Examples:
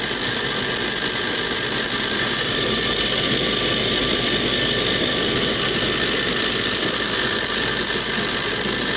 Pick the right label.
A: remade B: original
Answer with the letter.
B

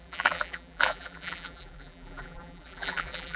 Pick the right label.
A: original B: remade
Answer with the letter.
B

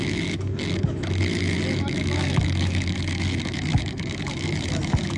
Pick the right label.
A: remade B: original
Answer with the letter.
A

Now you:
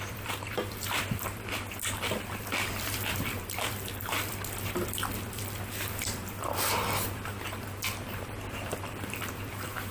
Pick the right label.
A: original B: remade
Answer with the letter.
B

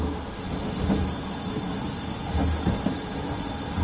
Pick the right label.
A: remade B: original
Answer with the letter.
B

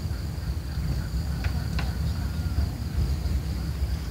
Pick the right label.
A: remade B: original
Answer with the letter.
B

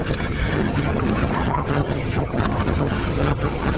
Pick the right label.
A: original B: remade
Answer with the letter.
B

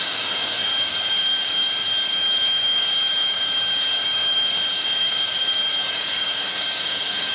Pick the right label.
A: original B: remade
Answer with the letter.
B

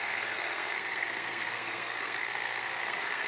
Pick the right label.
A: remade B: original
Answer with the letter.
A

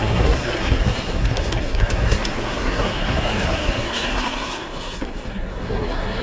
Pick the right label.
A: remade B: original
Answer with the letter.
A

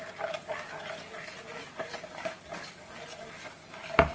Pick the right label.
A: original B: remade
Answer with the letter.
A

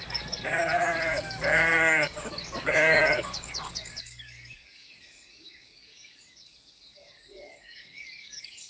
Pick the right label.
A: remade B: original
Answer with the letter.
A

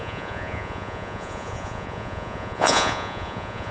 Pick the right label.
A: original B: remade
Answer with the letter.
B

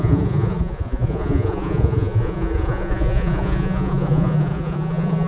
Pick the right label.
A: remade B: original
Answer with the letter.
A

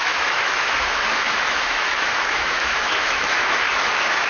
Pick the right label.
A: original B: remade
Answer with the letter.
B